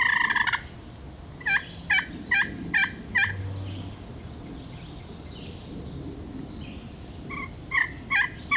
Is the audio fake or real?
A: real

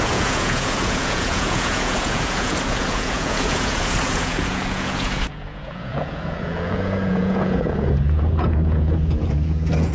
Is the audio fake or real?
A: fake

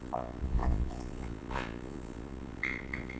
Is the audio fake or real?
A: fake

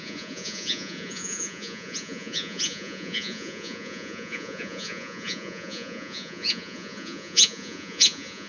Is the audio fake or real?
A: fake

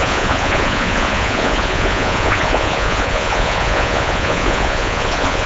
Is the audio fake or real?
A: fake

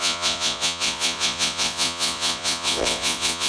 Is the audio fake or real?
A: fake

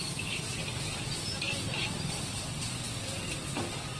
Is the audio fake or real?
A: real